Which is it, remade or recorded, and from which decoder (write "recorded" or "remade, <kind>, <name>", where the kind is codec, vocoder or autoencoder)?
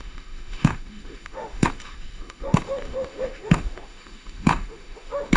remade, autoencoder, DAC-VAE